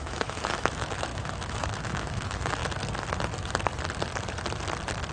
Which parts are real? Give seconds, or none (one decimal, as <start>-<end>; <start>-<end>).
2.6-5.1

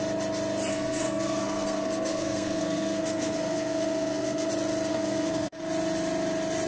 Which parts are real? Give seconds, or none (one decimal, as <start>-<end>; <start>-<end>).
0.0-0.7; 4.5-4.9; 5.6-6.7

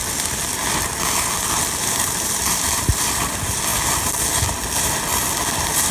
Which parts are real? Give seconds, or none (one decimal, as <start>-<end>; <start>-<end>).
0.0-1.8; 3.7-5.9

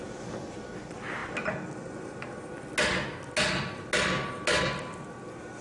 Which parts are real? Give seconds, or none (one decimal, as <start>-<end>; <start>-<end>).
0.0-5.6